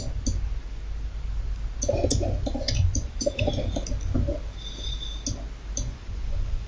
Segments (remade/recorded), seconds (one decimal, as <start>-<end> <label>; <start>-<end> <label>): 0.0-2.5 recorded; 2.5-3.5 remade; 3.5-5.9 recorded; 5.9-6.7 remade